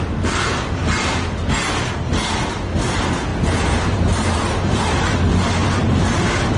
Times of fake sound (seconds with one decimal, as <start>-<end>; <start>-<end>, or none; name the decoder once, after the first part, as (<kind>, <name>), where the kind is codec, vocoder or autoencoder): none